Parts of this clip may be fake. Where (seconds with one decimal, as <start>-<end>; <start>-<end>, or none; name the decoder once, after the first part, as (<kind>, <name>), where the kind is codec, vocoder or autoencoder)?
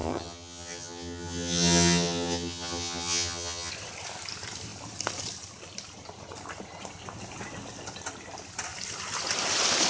0.0-3.7 (vocoder, HiFi-GAN)